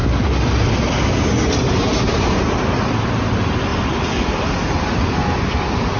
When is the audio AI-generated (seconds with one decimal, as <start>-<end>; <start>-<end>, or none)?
none